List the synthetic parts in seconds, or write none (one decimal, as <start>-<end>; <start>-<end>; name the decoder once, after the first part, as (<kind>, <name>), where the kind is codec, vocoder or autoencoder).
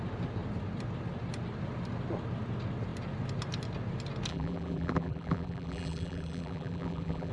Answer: 4.3-7.3 (vocoder, BigVGAN v2)